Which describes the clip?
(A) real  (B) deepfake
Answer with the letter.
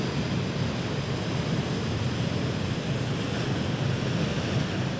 A